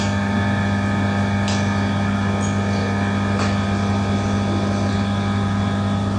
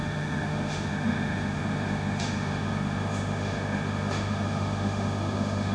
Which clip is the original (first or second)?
first